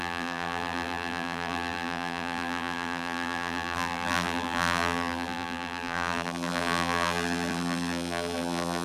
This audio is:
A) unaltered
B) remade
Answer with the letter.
B